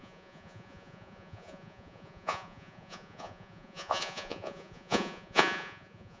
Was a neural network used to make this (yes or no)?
yes